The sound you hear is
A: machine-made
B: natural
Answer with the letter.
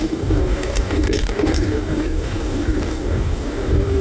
A